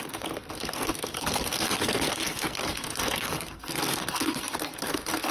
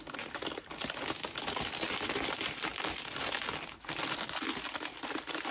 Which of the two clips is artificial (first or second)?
first